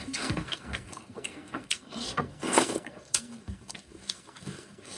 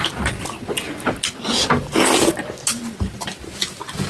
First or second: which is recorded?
second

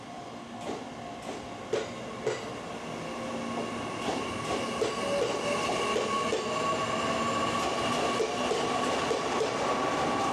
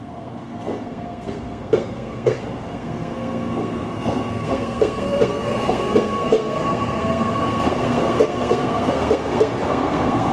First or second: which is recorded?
first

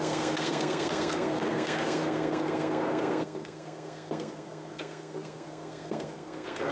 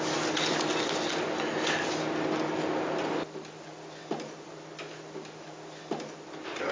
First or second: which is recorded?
second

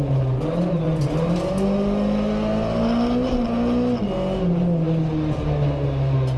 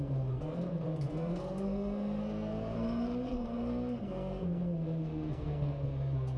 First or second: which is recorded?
first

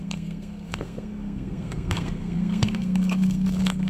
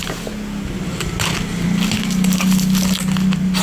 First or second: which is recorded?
second